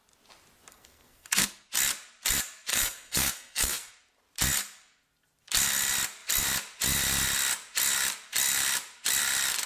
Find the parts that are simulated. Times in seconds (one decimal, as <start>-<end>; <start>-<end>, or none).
0.7-1.4; 2.7-3.9

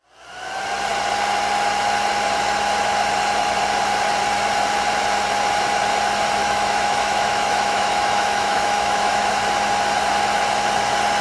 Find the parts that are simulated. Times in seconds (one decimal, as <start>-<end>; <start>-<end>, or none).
6.4-9.3

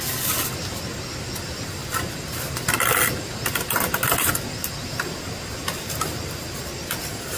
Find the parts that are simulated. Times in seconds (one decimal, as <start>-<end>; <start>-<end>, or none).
none